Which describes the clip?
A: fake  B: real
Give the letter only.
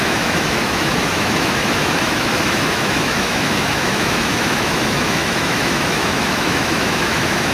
A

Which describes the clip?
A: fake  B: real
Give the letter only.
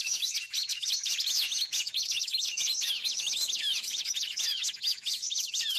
A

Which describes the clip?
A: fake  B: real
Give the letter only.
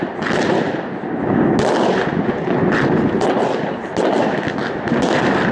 B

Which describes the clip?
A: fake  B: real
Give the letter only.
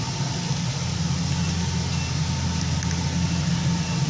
B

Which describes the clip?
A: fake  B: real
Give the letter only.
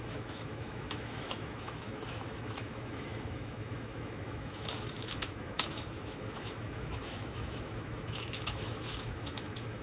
A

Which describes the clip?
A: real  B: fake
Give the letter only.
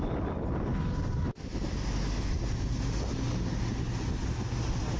A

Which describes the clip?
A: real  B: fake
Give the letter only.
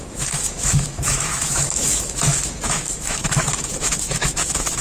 B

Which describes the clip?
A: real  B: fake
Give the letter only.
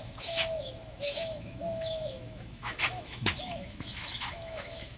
B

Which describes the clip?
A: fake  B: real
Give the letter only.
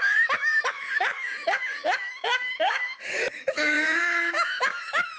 A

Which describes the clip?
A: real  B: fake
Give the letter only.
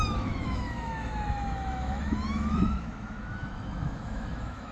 B